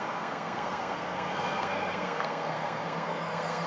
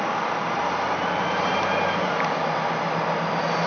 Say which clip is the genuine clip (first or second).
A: second